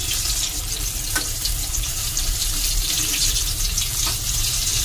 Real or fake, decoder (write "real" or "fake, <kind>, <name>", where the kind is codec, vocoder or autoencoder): fake, vocoder, BigVGAN v2